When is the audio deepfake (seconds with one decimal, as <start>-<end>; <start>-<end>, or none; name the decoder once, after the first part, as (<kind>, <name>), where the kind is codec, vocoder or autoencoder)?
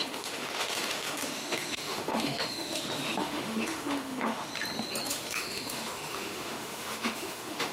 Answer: 0.0-4.5 (autoencoder, DAC-VAE); 5.1-7.7